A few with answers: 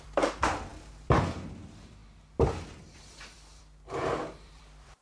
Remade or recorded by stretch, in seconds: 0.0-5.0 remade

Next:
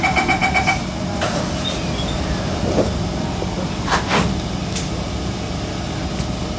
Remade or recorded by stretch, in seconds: 0.0-6.6 recorded